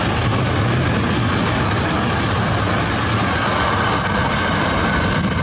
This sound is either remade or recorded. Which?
recorded